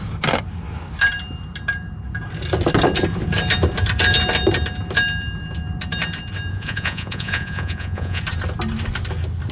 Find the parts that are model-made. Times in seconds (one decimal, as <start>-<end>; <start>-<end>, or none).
6.5-8.2